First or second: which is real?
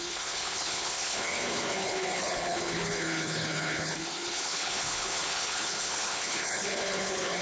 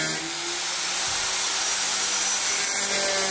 second